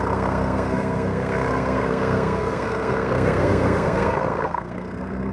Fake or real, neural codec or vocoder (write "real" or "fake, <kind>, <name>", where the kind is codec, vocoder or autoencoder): fake, codec, SNAC